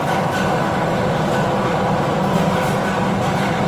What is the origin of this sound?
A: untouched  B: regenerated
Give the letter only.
A